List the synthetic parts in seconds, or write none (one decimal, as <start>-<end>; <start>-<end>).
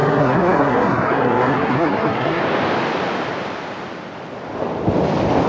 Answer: 0.0-2.4